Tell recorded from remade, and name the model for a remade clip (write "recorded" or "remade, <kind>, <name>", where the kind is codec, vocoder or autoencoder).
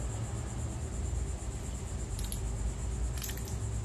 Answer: recorded